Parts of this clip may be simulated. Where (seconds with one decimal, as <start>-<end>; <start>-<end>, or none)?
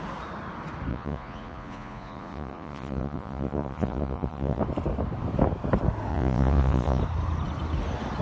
0.9-4.6; 6.1-7.0